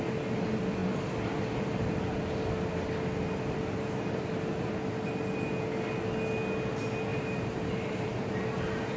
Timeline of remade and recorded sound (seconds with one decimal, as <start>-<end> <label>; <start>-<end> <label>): 0.0-7.1 recorded; 7.1-8.4 remade; 8.4-9.0 recorded